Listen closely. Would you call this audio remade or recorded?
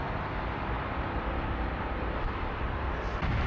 recorded